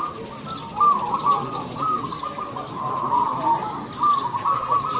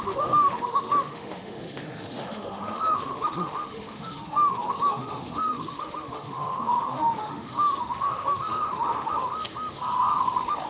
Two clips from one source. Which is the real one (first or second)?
first